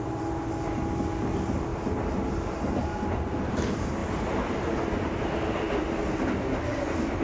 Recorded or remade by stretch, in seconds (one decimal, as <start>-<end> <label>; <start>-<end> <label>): 0.0-7.2 recorded